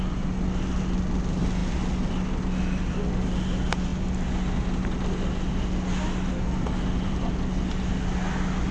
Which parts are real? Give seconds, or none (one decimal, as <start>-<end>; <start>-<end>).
0.0-8.7